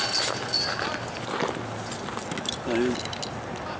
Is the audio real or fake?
real